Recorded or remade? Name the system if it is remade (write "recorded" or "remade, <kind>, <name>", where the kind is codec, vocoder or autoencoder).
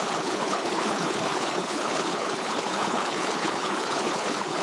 remade, codec, HILCodec